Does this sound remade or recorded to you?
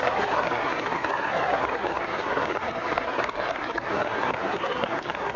remade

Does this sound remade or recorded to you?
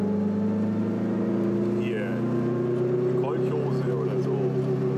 recorded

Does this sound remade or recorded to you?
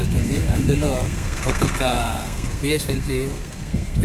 remade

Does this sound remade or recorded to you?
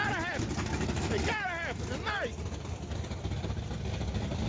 recorded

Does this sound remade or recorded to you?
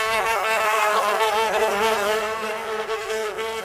remade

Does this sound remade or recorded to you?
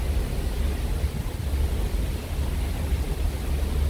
recorded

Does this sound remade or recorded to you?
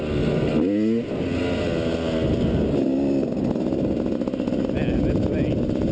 recorded